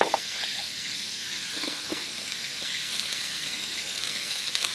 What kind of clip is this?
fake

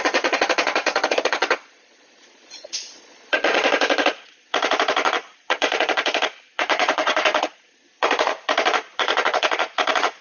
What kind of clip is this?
fake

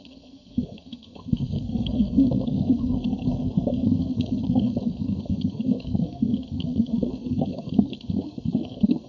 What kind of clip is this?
fake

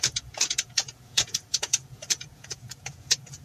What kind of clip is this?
fake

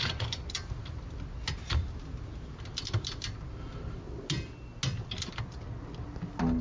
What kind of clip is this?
real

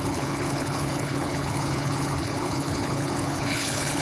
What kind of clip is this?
fake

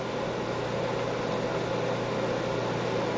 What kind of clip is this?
real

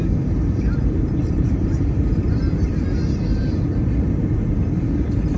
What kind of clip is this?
fake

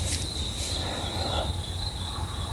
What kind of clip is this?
fake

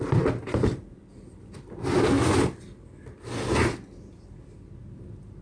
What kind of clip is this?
real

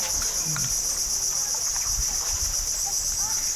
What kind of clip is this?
real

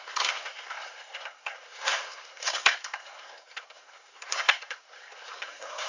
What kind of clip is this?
fake